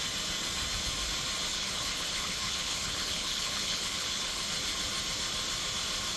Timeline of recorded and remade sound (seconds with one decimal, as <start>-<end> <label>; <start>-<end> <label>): 0.0-1.5 recorded; 1.5-4.4 remade; 4.4-6.2 recorded